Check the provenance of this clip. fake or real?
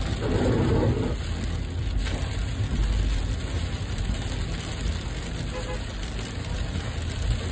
real